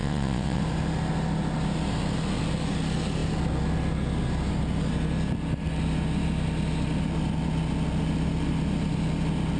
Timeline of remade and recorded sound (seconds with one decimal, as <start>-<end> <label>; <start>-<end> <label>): 0.0-0.6 remade; 0.6-9.6 recorded